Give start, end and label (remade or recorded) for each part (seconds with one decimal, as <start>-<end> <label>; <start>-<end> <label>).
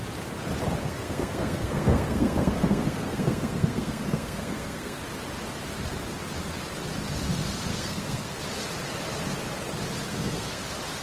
0.0-0.8 recorded; 0.8-5.0 remade; 5.0-7.7 recorded; 7.7-8.4 remade; 8.4-10.1 recorded; 10.1-10.6 remade; 10.6-11.0 recorded